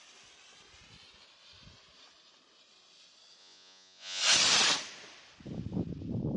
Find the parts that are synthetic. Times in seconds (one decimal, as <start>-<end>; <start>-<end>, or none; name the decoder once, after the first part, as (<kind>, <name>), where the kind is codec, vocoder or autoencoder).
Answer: 3.4-4.2 (vocoder, Vocos)